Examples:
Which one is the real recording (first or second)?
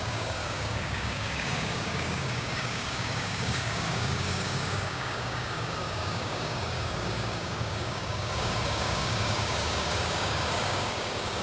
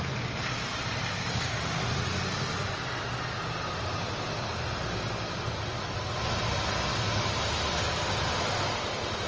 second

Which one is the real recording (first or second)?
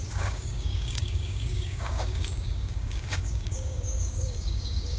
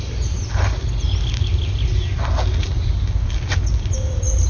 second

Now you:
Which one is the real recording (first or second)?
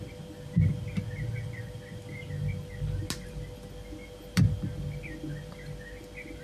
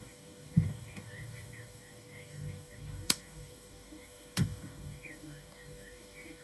first